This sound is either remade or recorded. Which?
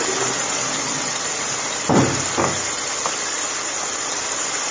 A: recorded